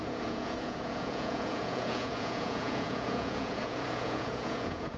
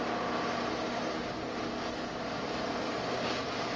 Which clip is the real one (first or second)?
second